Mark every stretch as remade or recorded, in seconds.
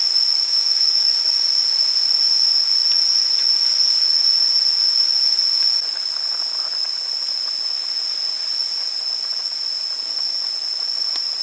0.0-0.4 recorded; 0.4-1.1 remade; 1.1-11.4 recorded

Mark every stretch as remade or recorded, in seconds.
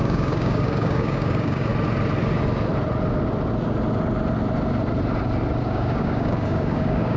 0.0-1.7 remade; 1.7-5.6 recorded; 5.6-7.2 remade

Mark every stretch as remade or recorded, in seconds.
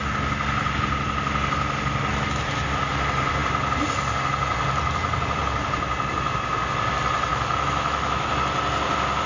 0.0-2.1 recorded; 2.1-2.6 remade; 2.6-7.3 recorded; 7.3-8.3 remade; 8.3-9.3 recorded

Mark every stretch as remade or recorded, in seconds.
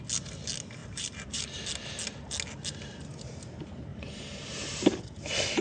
0.0-0.8 recorded; 0.8-1.6 remade; 1.6-3.9 recorded; 3.9-4.8 remade; 4.8-5.6 recorded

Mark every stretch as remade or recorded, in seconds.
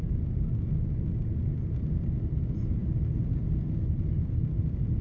0.0-5.0 recorded